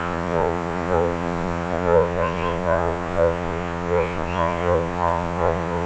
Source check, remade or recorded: remade